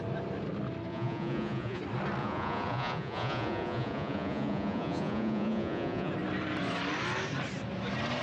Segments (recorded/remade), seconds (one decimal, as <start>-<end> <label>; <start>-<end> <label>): 0.0-0.9 recorded; 0.9-1.8 remade; 1.8-2.2 recorded; 2.2-6.1 remade; 6.1-8.2 recorded